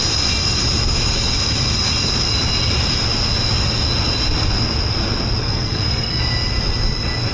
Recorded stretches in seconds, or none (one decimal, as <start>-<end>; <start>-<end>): 0.0-5.4; 6.2-7.3